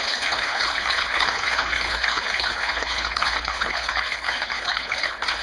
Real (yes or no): no